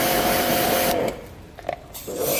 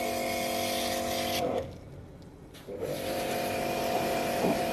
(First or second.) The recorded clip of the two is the second